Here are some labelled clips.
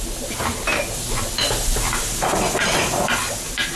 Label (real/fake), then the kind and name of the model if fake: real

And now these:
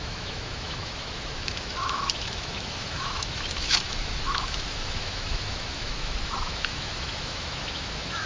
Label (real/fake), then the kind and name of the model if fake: fake, autoencoder, DAC-VAE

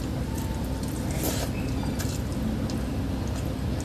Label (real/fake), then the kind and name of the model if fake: real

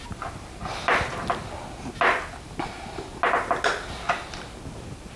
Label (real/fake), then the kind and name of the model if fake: real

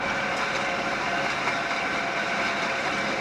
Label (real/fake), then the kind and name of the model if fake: real